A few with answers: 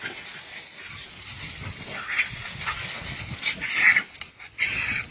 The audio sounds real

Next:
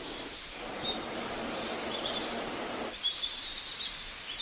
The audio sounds fake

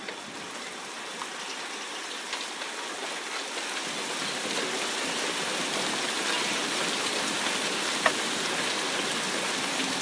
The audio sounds real